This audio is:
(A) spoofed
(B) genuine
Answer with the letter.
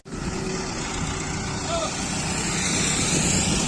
B